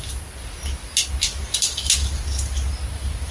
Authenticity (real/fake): real